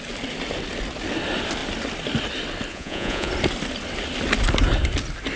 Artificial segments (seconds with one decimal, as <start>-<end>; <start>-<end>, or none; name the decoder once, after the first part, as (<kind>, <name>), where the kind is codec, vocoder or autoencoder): 2.7-3.3 (vocoder, Vocos)